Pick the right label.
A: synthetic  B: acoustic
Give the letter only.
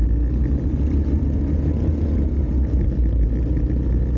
B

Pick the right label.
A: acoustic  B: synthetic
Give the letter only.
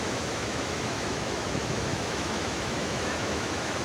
B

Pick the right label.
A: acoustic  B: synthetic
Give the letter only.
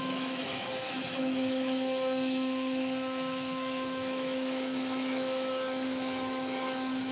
B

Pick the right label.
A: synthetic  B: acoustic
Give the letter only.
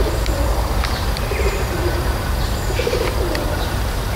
B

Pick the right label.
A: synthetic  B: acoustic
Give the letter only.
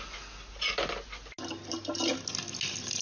B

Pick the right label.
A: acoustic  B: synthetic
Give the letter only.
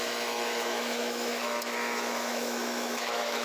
B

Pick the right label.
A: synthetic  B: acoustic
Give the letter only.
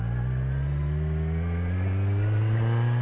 B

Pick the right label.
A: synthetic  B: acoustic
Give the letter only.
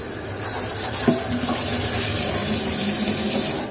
B